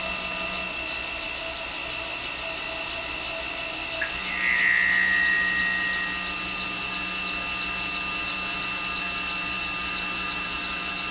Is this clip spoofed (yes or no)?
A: no